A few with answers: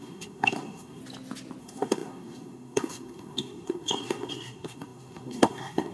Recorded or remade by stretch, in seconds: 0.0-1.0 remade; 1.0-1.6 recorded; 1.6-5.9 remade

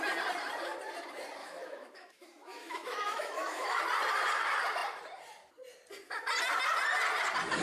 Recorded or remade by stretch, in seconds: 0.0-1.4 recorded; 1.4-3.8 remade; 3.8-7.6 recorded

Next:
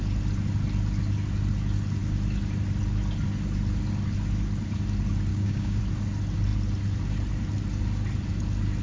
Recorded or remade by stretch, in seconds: 0.0-5.3 recorded; 5.3-5.8 remade; 5.8-8.8 recorded

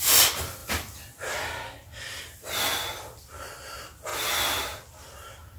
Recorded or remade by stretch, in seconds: 0.0-5.6 remade